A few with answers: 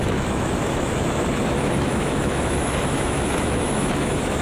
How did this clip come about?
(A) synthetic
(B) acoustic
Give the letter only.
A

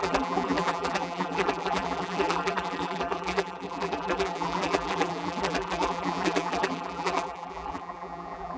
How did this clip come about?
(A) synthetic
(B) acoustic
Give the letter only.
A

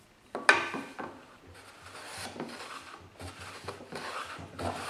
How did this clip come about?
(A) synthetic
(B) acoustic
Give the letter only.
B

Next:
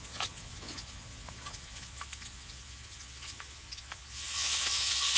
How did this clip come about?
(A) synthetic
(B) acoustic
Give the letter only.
A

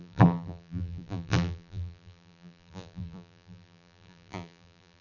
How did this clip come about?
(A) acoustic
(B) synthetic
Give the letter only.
B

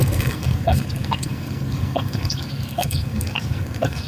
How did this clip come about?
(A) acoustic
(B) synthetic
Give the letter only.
B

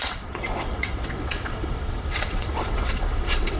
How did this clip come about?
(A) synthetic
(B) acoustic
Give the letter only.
A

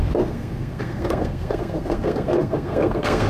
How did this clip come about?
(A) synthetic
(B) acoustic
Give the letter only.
A